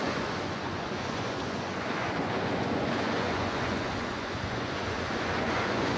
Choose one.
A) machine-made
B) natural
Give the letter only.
A